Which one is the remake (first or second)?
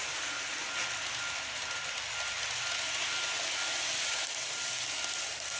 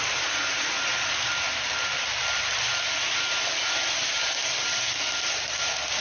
second